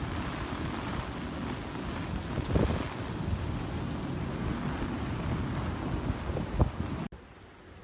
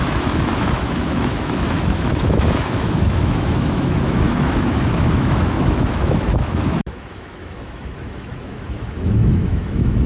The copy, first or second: second